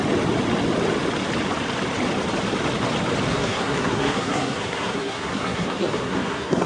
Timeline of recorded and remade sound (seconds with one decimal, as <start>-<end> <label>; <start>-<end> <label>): 0.0-3.3 recorded; 3.3-6.7 remade